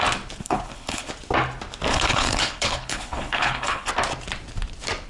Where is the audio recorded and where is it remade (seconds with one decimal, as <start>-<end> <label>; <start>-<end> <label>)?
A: 0.0-0.4 recorded; 0.4-1.1 remade; 1.1-1.9 recorded; 1.9-3.9 remade; 3.9-5.1 recorded